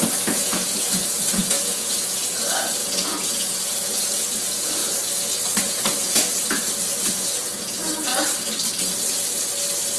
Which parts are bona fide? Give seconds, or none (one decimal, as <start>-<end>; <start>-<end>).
4.8-5.6; 8.1-10.0